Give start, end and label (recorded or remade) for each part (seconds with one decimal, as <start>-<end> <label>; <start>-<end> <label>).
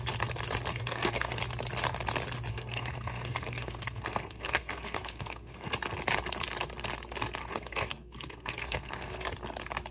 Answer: 0.0-0.7 recorded; 0.7-1.4 remade; 1.4-2.5 recorded; 2.5-5.7 remade; 5.7-7.4 recorded; 7.4-9.3 remade; 9.3-9.9 recorded